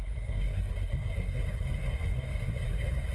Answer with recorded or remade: remade